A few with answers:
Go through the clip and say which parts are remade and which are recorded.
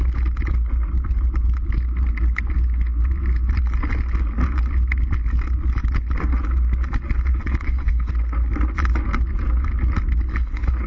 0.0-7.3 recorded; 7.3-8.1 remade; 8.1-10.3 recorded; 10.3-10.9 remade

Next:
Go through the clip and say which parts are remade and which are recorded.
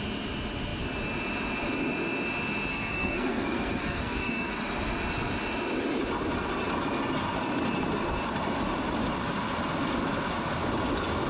0.0-2.7 recorded; 2.7-4.5 remade; 4.5-11.3 recorded